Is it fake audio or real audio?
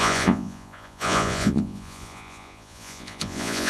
fake